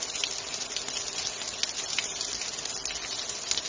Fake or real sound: real